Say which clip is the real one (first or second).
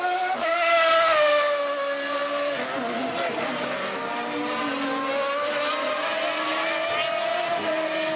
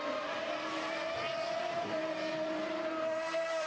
first